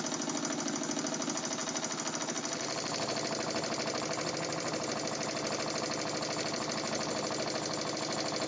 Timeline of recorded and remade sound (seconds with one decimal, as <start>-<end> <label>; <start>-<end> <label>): 0.0-8.5 recorded